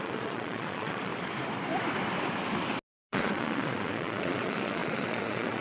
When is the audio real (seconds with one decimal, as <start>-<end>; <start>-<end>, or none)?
1.1-3.1